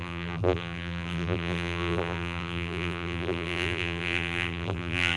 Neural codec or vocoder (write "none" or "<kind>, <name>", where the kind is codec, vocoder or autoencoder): vocoder, BigVGAN v2